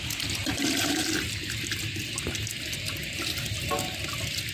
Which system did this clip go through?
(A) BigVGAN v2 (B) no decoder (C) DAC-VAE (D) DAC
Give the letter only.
B